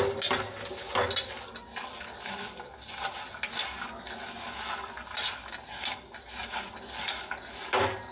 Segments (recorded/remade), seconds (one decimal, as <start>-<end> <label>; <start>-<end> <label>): 0.0-8.1 recorded